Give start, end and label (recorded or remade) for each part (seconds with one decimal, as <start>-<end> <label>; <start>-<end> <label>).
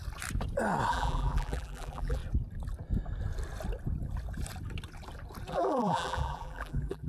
0.0-0.9 recorded; 0.9-2.2 remade; 2.2-5.5 recorded; 5.5-7.1 remade